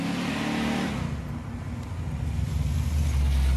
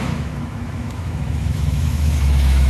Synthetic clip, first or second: second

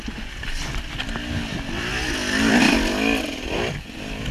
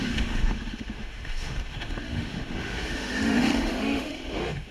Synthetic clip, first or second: second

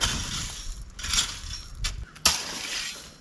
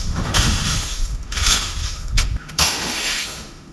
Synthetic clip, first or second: second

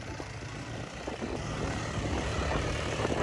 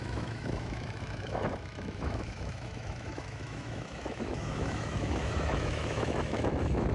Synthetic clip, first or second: second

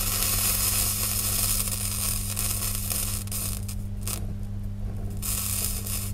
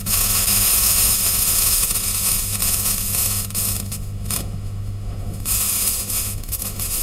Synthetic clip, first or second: second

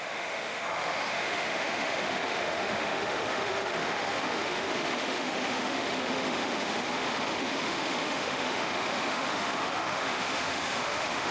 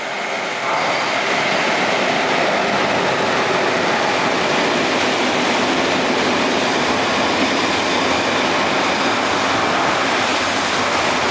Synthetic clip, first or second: first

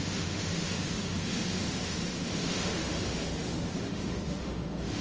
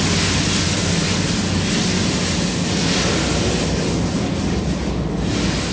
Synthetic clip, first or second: first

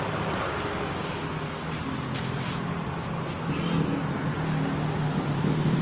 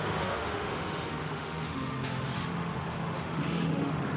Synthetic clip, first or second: second